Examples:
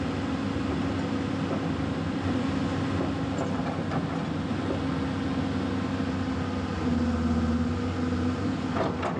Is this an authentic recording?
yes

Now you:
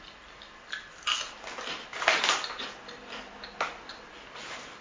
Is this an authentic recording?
yes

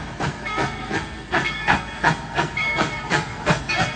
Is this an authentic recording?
no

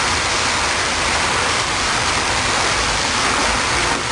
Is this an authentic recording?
yes